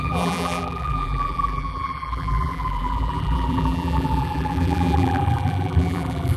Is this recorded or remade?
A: remade